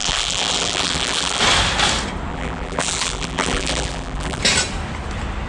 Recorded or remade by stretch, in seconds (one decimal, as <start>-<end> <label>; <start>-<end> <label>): 0.0-1.4 remade; 1.4-2.3 recorded; 2.3-4.4 remade; 4.4-5.5 recorded